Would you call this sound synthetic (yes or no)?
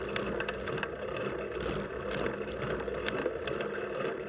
no